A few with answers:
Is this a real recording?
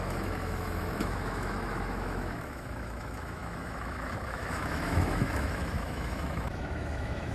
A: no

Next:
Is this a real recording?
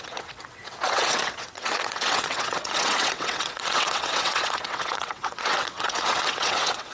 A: no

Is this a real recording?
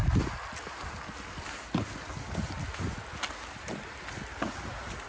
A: yes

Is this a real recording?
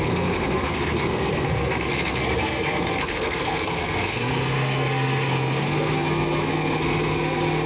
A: no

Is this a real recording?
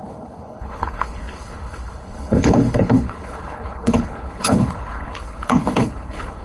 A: no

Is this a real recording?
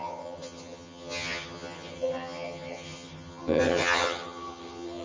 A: no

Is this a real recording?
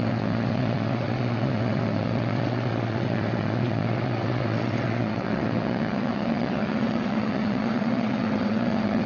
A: no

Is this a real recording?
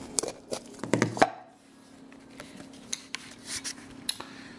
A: yes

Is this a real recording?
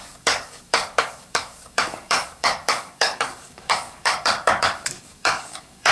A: no